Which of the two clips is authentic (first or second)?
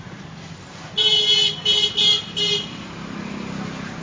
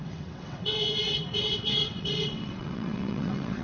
first